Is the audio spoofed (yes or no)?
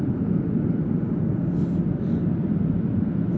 no